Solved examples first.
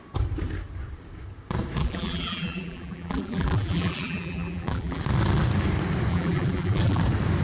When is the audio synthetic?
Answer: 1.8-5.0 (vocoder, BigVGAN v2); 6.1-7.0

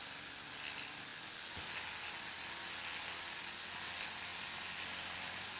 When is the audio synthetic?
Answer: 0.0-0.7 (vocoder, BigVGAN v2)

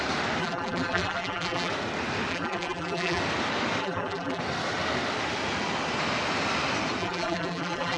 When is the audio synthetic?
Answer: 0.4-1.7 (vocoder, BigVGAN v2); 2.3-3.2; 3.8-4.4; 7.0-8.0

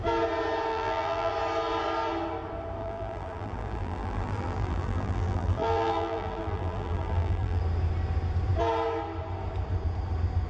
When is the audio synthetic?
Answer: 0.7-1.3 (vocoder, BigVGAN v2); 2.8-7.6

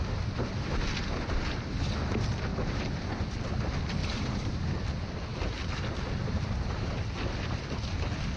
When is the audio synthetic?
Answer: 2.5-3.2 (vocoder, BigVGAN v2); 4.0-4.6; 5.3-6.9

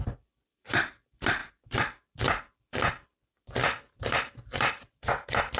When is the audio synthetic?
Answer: 0.0-5.6 (vocoder, BigVGAN v2)

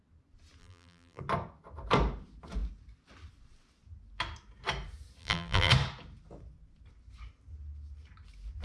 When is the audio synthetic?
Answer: 0.6-1.2 (vocoder, BigVGAN v2); 5.2-5.7

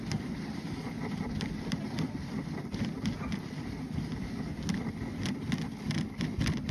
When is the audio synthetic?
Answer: 0.0-4.5 (vocoder, BigVGAN v2); 6.2-6.7